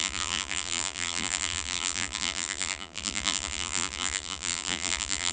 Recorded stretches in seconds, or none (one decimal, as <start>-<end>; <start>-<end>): none